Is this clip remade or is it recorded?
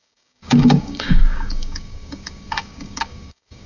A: remade